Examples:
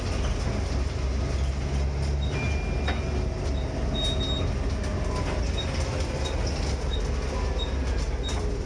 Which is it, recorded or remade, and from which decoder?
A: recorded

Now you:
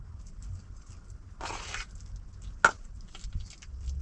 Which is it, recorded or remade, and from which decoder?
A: recorded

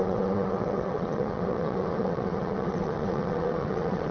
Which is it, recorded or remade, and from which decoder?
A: remade, vocoder, WaveNeXt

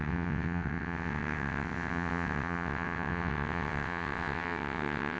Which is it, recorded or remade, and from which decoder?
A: remade, vocoder, WaveNeXt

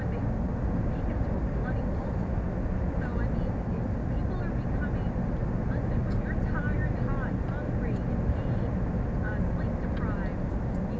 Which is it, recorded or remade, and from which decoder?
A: recorded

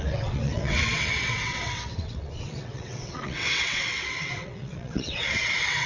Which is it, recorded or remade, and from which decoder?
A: remade, vocoder, WaveNeXt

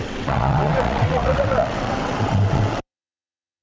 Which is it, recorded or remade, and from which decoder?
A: remade, vocoder, WaveNeXt